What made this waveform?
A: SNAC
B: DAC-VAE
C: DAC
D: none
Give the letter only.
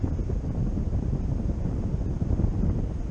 D